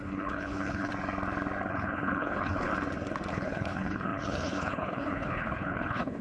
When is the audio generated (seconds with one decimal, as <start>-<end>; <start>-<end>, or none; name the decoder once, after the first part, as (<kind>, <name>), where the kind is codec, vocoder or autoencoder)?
0.0-0.9 (codec, HILCodec); 1.7-2.7; 3.3-6.2